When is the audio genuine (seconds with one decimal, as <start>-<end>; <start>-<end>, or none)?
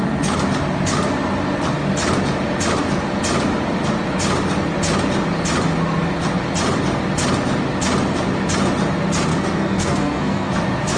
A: 0.0-9.3; 10.5-11.0